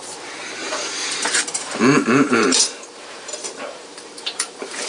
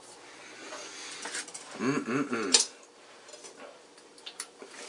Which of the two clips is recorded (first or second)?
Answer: second